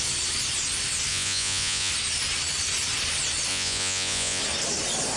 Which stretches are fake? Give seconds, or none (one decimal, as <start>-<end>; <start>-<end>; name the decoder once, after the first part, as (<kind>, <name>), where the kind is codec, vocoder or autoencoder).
1.1-1.9 (vocoder, Vocos); 3.5-4.4